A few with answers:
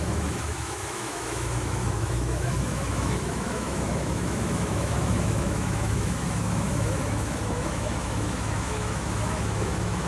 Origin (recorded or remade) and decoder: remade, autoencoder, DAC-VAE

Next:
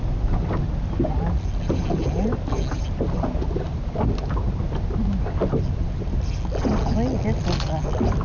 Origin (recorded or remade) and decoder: recorded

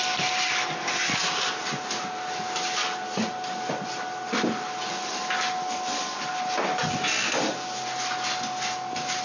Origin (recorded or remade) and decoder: recorded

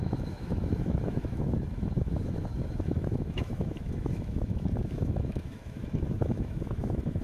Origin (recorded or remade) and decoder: remade, autoencoder, DAC-VAE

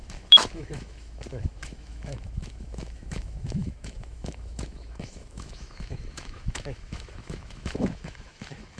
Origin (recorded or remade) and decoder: remade, autoencoder, DAC-VAE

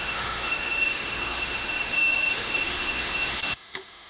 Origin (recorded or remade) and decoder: remade, autoencoder, DAC-VAE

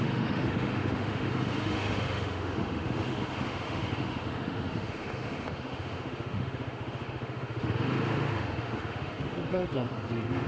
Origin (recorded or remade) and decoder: remade, autoencoder, DAC-VAE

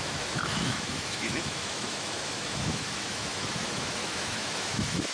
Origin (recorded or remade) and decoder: remade, autoencoder, DAC-VAE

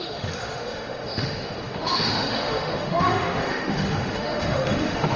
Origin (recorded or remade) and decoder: remade, autoencoder, DAC-VAE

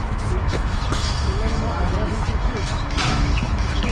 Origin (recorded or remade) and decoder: remade, autoencoder, DAC-VAE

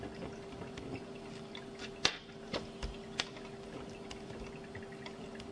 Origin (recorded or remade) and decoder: recorded